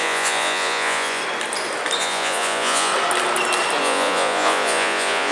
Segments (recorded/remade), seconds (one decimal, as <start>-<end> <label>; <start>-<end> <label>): 0.0-1.2 remade; 1.2-2.0 recorded; 2.0-2.9 remade; 2.9-3.8 recorded; 3.8-5.3 remade